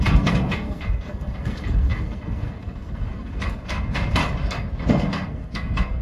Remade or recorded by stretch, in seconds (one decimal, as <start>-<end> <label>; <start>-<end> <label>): 0.0-4.2 remade; 4.2-4.9 recorded; 4.9-6.0 remade